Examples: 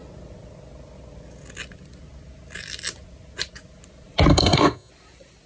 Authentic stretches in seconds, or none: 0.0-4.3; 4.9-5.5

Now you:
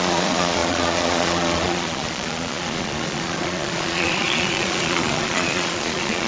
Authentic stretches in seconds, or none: none

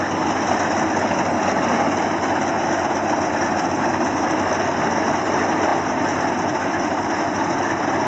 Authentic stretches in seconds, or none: 0.0-8.1

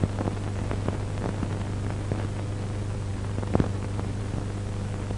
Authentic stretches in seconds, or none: 0.0-3.1; 4.2-5.2

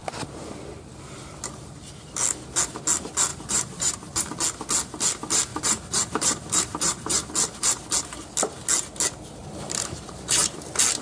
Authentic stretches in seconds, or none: 0.0-3.3; 4.3-5.5; 7.3-9.4; 10.5-11.0

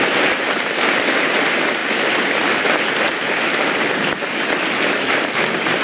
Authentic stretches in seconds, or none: 0.0-5.8

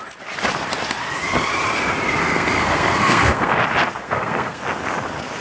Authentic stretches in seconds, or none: 0.0-2.2; 3.6-4.0; 4.6-5.4

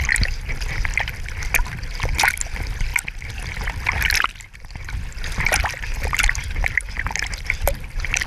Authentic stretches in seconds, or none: 0.0-8.3